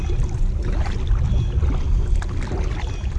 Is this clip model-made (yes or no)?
no